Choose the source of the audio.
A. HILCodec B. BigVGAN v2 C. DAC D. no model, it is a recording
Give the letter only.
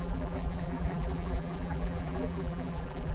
B